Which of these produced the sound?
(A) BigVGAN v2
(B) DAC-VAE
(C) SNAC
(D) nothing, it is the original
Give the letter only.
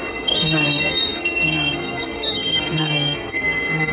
C